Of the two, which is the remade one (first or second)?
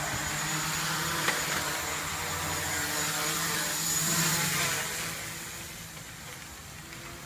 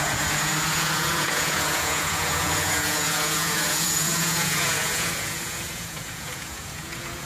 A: second